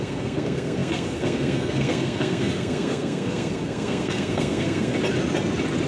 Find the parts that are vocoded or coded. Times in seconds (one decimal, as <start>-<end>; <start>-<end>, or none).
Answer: 0.0-4.9